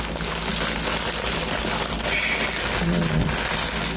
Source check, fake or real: real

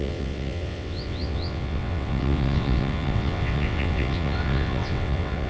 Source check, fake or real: fake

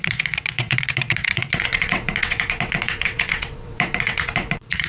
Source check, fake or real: fake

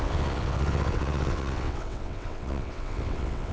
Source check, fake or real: fake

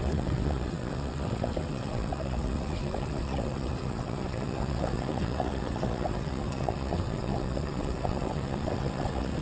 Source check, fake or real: fake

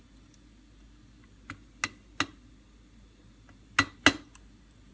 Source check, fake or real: real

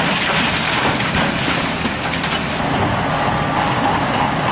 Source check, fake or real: real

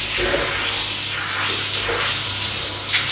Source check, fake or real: real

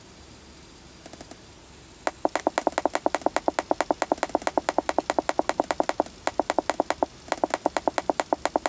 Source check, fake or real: real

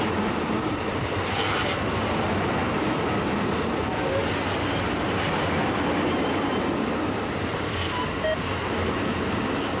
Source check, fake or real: real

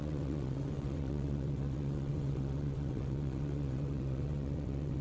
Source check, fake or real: fake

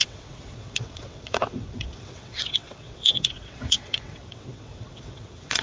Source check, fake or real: fake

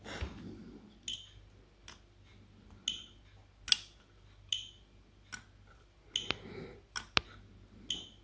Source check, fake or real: real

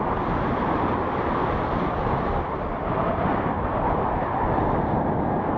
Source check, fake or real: real